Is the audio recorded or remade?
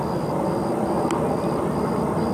recorded